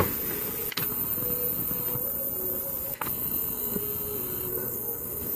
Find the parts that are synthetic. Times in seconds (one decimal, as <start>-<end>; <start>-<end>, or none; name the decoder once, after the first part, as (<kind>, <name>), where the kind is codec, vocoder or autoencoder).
2.9-3.8 (codec, SNAC); 4.5-5.4